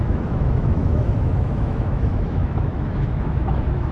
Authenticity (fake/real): fake